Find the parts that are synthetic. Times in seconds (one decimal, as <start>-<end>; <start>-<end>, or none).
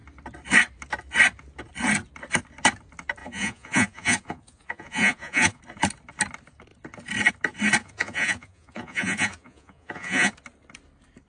3.2-5.6; 7.8-10.3